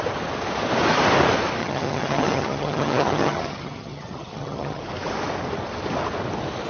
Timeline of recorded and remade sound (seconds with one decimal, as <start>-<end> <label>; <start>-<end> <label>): 0.0-1.6 recorded; 1.6-4.8 remade; 4.8-6.7 recorded